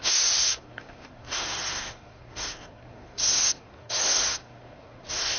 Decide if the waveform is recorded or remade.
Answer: remade